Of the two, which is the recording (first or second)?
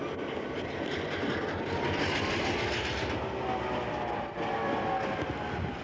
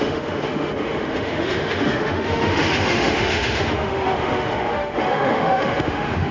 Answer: first